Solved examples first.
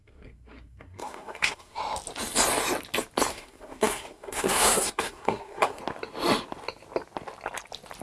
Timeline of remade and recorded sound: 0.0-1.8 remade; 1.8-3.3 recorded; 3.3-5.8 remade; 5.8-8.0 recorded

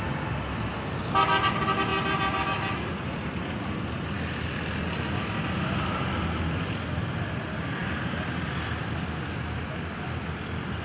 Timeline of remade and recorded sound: 0.0-10.8 recorded

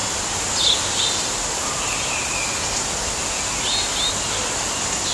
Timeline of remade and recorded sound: 0.0-5.1 recorded

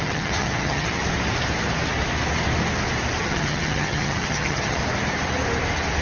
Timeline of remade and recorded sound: 0.0-1.0 remade; 1.0-3.2 recorded; 3.2-4.8 remade; 4.8-6.0 recorded

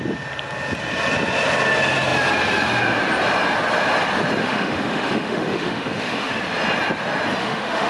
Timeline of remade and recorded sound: 0.0-4.4 recorded; 4.4-6.4 remade; 6.4-7.4 recorded; 7.4-7.9 remade

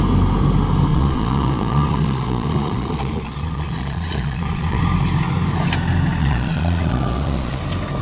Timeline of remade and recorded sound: 0.0-0.9 recorded; 0.9-4.8 remade; 4.8-6.2 recorded; 6.2-7.6 remade; 7.6-8.0 recorded

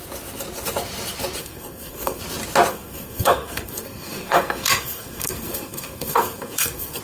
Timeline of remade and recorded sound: 0.0-1.4 recorded; 1.4-2.2 remade; 2.2-2.7 recorded; 2.7-7.0 remade